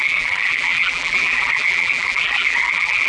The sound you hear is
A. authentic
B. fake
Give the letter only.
B